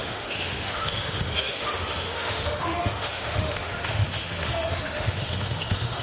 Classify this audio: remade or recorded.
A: remade